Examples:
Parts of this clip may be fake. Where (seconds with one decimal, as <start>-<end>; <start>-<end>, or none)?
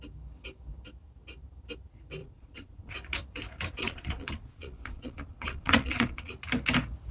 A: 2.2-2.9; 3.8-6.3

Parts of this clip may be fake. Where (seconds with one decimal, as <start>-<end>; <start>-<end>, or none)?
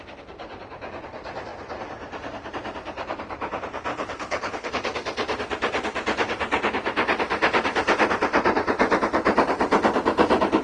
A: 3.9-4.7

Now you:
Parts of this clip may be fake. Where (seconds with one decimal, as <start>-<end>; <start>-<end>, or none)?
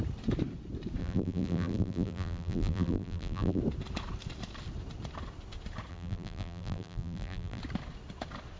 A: 1.0-3.6; 5.9-7.6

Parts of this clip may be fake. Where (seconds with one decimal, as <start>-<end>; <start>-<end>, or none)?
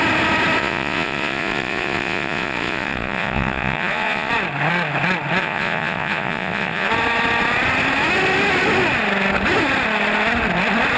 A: 0.6-4.3; 5.4-6.9